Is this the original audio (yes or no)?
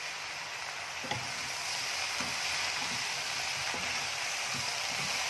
yes